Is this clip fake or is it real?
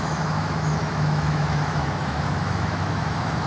fake